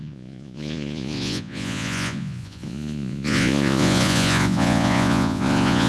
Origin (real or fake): fake